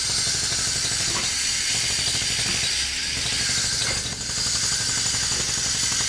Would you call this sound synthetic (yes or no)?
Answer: no